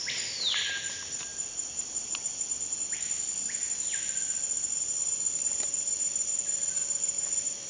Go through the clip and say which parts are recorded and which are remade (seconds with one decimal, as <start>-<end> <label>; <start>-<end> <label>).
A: 0.0-7.7 recorded